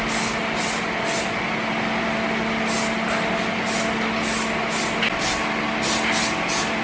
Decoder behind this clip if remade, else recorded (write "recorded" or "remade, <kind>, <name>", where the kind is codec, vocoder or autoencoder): recorded